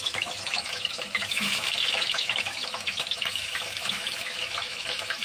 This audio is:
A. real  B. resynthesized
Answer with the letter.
B